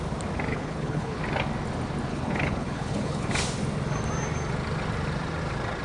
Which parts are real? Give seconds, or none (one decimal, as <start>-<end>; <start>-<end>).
0.0-0.5; 1.2-2.1; 3.3-5.8